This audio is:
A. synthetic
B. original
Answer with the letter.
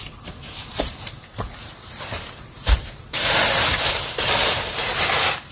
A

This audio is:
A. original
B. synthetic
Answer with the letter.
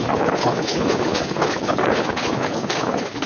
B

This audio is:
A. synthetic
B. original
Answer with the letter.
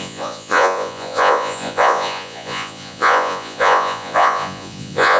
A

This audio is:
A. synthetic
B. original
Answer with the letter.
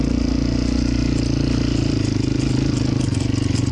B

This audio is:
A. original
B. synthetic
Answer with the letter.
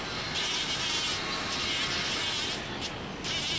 A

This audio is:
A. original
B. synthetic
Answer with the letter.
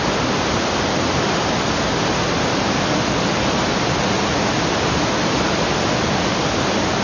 A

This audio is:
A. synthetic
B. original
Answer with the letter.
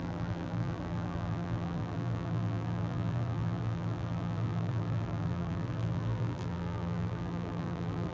A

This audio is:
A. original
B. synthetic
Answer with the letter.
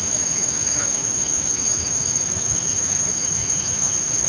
B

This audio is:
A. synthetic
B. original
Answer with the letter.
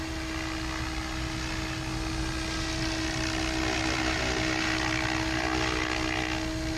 B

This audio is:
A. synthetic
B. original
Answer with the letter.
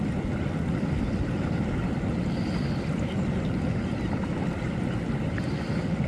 B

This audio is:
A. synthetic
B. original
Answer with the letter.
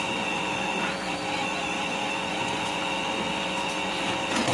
A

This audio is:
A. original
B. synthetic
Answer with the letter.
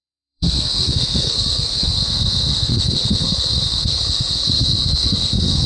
B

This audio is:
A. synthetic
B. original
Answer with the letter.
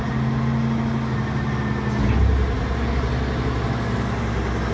B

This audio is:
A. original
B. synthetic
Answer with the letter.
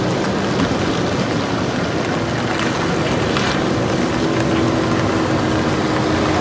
A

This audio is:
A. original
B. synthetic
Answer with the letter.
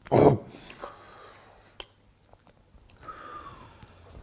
A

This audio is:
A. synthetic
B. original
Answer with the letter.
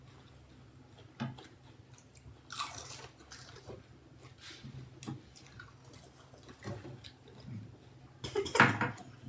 B